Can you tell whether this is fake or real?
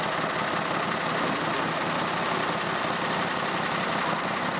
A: real